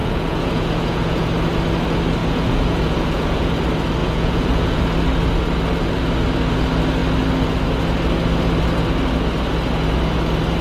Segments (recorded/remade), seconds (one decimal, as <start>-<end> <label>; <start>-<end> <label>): 0.0-1.3 remade; 1.3-2.2 recorded; 2.2-3.5 remade; 3.5-4.0 recorded; 4.0-4.8 remade; 4.8-10.6 recorded

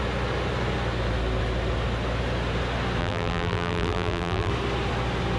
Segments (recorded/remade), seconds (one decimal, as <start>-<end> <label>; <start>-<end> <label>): 0.0-3.0 recorded; 3.0-4.5 remade; 4.5-5.4 recorded